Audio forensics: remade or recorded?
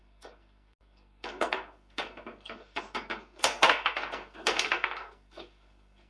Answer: remade